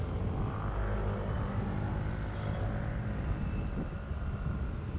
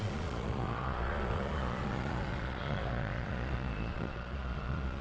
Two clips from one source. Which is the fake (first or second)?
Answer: second